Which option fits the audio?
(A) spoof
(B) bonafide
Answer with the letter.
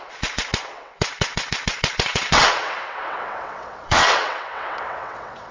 A